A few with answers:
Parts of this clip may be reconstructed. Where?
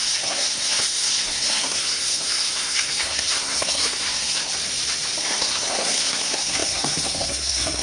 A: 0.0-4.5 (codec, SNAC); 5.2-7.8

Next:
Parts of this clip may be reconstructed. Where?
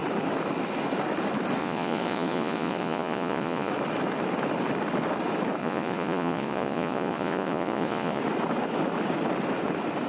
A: 1.6-3.7 (vocoder, Vocos); 5.6-8.2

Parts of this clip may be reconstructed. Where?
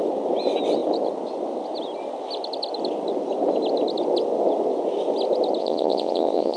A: 5.6-6.6 (vocoder, Vocos)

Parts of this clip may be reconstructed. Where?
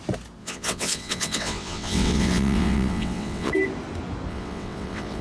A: 0.4-3.5 (vocoder, WaveNeXt); 4.3-5.2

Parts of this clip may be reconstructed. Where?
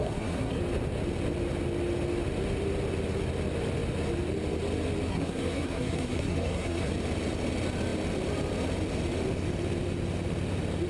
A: 0.0-0.6 (codec, SNAC); 5.1-6.9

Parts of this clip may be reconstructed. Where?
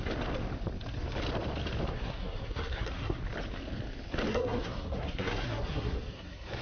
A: 1.9-3.2 (codec, SNAC); 4.3-6.6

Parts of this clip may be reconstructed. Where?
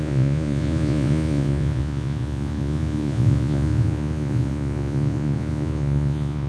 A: 0.0-6.5 (vocoder, Vocos)